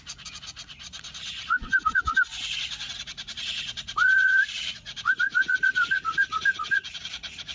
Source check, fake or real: fake